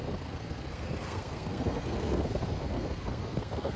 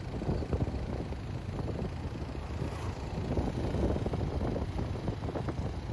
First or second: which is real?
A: second